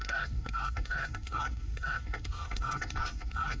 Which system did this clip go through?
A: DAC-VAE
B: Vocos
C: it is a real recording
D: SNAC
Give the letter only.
D